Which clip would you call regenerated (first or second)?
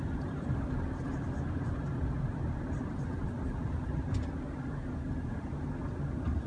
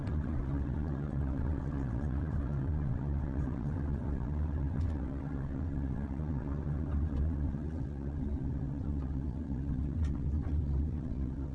second